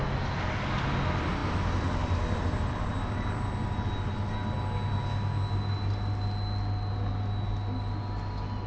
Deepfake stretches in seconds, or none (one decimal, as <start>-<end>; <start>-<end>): none